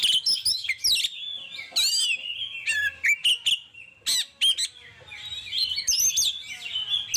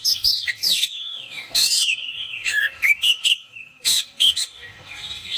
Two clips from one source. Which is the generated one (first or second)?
second